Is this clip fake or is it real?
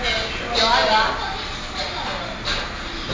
real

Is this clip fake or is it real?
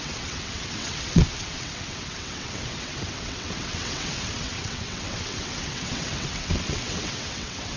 fake